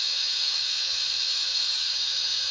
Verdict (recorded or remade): remade